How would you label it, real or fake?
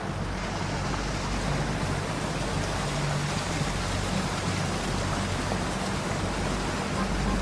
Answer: real